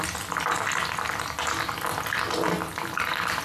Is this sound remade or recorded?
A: recorded